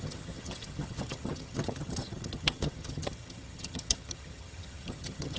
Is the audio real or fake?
fake